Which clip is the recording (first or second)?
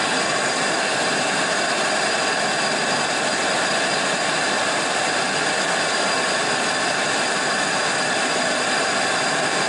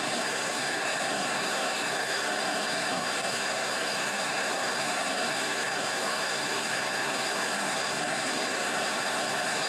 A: first